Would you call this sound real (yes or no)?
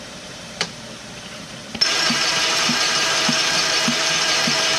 no